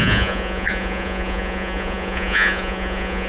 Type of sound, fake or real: fake